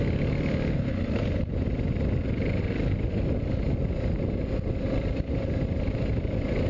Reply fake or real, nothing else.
real